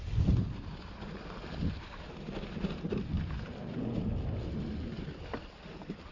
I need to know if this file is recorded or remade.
recorded